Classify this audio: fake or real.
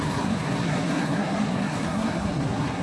fake